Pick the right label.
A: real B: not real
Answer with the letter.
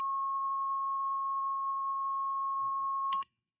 B